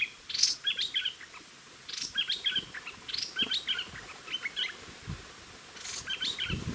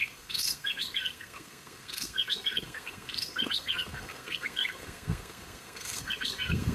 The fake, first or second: second